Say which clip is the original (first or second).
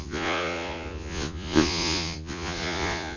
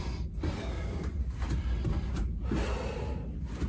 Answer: second